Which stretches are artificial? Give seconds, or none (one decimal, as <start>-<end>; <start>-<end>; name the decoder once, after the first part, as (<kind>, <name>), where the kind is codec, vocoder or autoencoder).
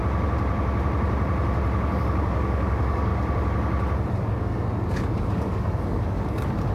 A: 2.0-3.1 (codec, DAC); 4.1-6.7